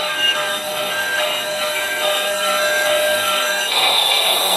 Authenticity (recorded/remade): remade